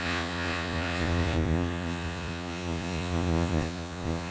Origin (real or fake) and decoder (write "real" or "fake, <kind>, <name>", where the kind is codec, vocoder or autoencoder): fake, vocoder, Vocos